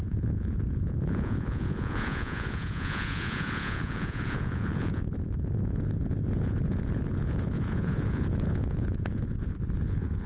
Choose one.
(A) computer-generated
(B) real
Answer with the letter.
A